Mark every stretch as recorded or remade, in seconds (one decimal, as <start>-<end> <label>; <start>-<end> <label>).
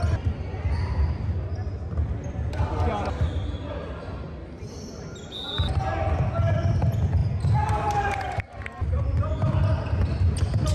0.0-7.2 recorded; 7.2-9.3 remade; 9.3-10.7 recorded